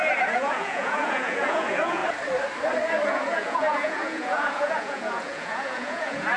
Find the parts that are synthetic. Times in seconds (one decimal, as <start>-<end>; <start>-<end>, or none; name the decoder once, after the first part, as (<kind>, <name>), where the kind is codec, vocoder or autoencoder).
0.0-2.0 (vocoder, Vocos); 3.1-6.4